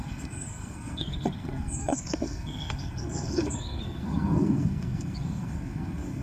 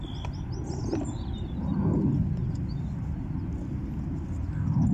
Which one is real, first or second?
second